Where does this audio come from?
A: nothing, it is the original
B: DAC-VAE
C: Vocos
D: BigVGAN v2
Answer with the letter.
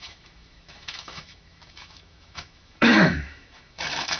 B